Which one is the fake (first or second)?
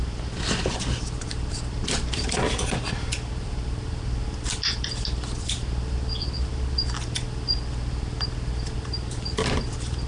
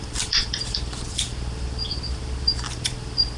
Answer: second